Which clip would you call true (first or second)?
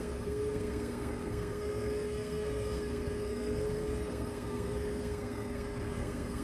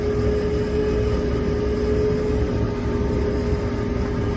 second